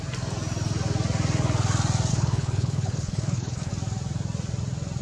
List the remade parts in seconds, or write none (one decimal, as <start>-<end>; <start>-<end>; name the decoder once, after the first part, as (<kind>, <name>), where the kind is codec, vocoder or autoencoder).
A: 2.1-3.7 (codec, HILCodec)